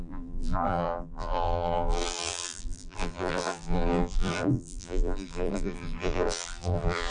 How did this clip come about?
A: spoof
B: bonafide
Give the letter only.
A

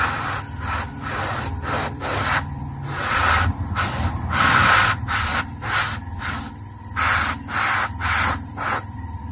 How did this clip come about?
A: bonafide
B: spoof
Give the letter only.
B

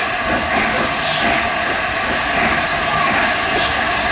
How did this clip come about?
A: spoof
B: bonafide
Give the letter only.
B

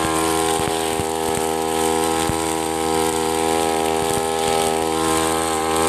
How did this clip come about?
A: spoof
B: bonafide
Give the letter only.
B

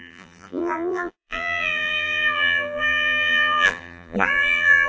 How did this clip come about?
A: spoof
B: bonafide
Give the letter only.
A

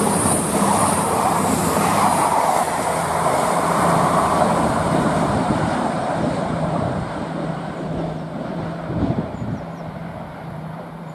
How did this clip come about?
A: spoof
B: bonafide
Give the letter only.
A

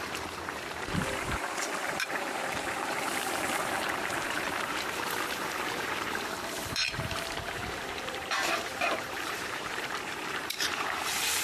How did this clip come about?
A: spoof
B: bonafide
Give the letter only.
A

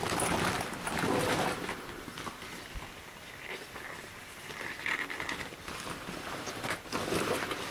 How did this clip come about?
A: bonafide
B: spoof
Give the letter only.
B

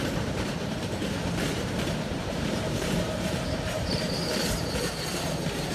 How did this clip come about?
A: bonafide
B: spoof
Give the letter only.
B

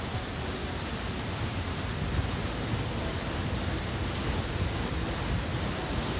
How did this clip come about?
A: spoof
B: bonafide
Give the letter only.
B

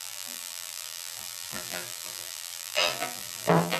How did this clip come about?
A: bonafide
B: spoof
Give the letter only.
B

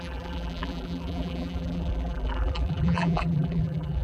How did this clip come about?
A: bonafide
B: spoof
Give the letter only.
B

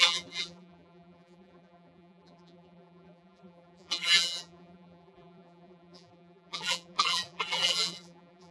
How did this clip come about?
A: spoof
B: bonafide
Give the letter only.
A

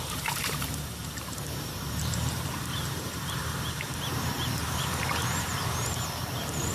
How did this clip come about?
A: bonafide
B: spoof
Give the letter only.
B